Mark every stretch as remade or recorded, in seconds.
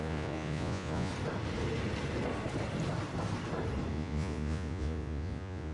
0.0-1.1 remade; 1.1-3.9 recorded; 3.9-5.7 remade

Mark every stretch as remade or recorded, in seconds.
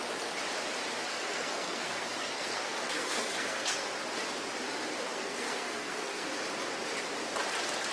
0.0-1.1 recorded; 1.1-3.9 remade; 3.9-5.0 recorded; 5.0-6.3 remade; 6.3-7.9 recorded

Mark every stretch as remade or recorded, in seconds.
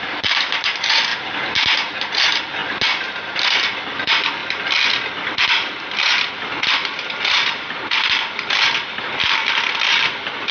0.0-1.1 remade; 1.1-2.2 recorded; 2.2-2.6 remade; 2.6-3.2 recorded; 3.2-10.5 remade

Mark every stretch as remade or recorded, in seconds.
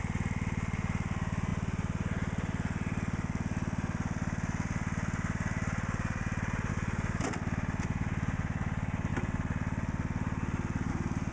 0.0-11.3 recorded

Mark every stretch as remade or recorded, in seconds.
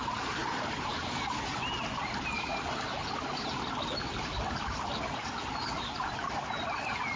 0.0-0.4 recorded; 0.4-1.7 remade; 1.7-7.2 recorded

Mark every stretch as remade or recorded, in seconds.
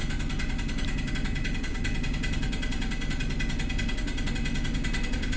0.0-5.4 recorded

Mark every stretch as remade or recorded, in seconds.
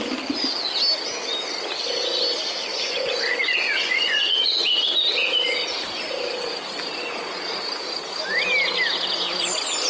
0.0-2.7 recorded; 2.7-4.6 remade; 4.6-9.9 recorded